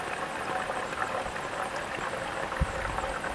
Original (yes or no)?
yes